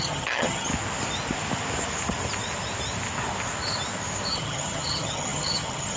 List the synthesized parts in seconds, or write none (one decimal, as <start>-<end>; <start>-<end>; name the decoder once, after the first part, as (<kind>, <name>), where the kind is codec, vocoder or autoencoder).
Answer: 0.0-0.7 (vocoder, HiFi-GAN); 4.3-6.0